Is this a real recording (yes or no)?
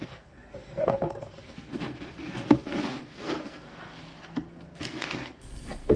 no